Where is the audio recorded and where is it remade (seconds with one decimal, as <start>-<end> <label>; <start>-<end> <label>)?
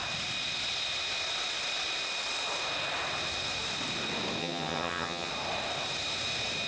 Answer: 0.0-4.4 recorded; 4.4-5.3 remade; 5.3-6.7 recorded